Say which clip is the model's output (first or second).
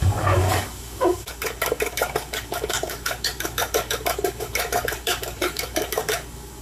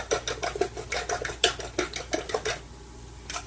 first